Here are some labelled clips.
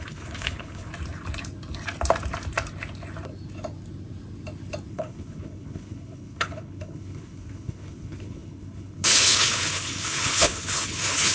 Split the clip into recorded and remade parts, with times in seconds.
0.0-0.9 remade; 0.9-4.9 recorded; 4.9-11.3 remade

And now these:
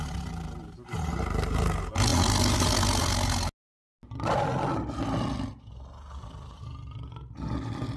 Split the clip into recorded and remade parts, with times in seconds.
0.0-8.0 recorded

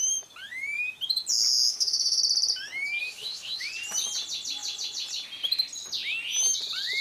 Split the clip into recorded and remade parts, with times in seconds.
0.0-1.7 recorded; 1.7-2.2 remade; 2.2-3.0 recorded; 3.0-3.7 remade; 3.7-7.0 recorded